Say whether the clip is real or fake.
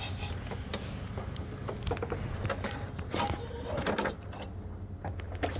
real